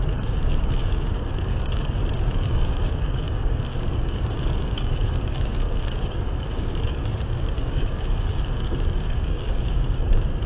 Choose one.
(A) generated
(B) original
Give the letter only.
A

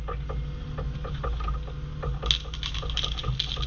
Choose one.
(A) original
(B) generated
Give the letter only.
A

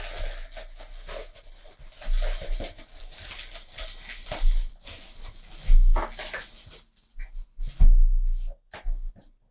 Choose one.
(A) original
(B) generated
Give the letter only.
A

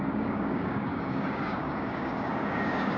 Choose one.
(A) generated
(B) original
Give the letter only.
A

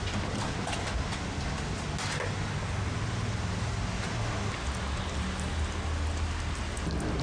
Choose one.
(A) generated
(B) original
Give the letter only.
B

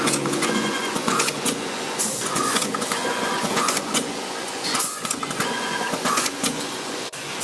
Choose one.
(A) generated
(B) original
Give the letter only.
A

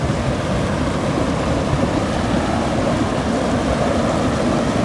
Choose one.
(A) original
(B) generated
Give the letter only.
A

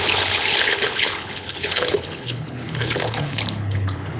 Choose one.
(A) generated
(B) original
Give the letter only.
A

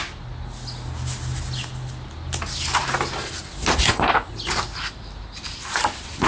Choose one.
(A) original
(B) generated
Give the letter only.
A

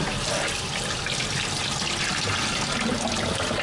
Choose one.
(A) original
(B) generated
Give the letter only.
A